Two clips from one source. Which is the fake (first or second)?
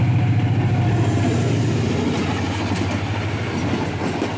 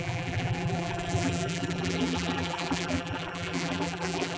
second